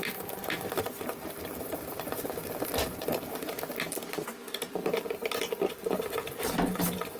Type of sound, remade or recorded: remade